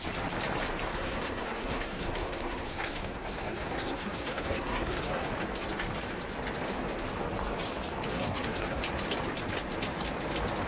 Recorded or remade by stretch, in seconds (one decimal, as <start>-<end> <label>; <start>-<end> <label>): 0.0-0.9 recorded; 0.9-5.3 remade; 5.3-8.1 recorded; 8.1-8.8 remade; 8.8-10.7 recorded